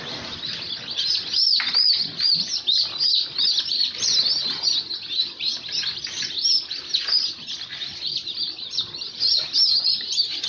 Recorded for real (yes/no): yes